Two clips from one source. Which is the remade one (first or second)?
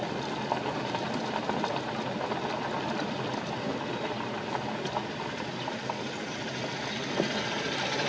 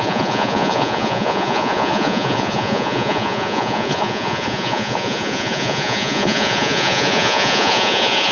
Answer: second